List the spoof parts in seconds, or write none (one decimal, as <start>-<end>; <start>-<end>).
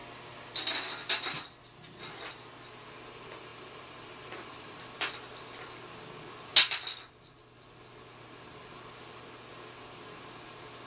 3.5-5.1